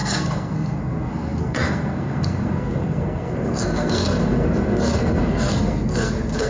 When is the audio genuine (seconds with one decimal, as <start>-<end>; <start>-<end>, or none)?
none